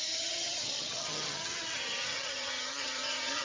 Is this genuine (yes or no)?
no